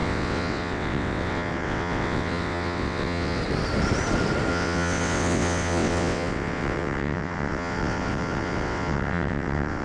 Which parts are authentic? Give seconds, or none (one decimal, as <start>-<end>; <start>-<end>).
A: 3.4-4.5